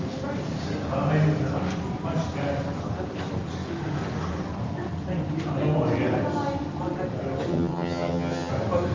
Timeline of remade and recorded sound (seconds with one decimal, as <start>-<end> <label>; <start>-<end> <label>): 0.0-7.5 recorded; 7.5-8.5 remade; 8.5-8.9 recorded